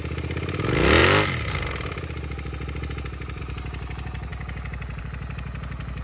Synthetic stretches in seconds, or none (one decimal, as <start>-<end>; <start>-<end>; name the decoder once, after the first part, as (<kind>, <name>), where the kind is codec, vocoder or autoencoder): none